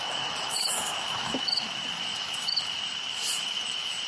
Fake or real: fake